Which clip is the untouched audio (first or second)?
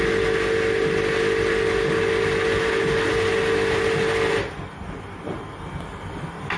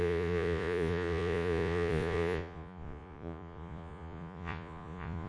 first